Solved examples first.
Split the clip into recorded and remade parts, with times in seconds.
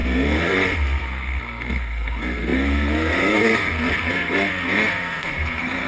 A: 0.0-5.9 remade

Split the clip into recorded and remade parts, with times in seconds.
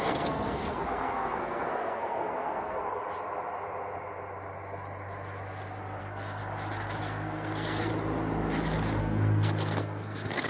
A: 0.0-3.0 remade; 3.0-6.0 recorded; 6.0-6.4 remade; 6.4-7.0 recorded; 7.0-7.9 remade; 7.9-9.0 recorded; 9.0-10.5 remade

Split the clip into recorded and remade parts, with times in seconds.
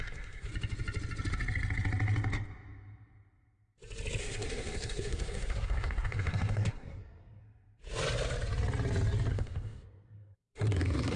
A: 0.0-0.5 remade; 0.5-4.2 recorded; 4.2-7.4 remade; 7.4-9.3 recorded; 9.3-11.2 remade